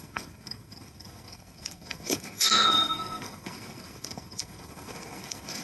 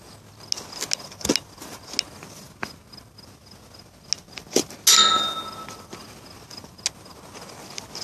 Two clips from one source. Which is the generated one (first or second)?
first